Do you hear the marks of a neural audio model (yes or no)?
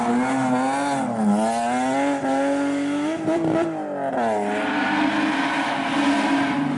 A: no